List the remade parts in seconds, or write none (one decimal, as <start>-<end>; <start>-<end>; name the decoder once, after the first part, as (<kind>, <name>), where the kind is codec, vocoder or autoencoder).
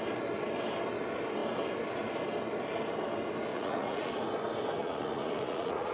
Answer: 3.5-4.1 (vocoder, Vocos); 4.8-5.9